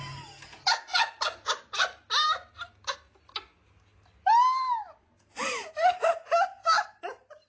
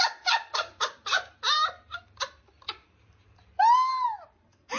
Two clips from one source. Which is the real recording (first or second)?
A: first